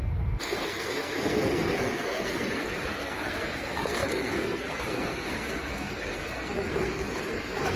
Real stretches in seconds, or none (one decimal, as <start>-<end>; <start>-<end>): none